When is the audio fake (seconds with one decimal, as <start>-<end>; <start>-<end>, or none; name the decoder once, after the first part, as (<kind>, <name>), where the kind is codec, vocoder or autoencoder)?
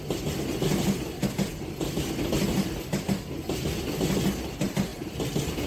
none